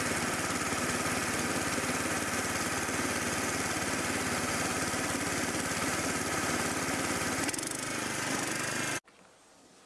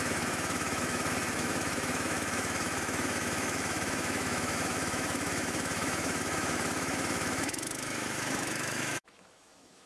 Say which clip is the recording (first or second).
first